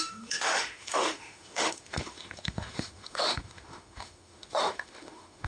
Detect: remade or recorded remade